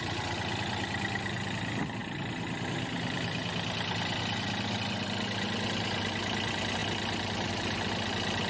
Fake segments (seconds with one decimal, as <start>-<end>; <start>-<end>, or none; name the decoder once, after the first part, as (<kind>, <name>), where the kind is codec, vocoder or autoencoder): none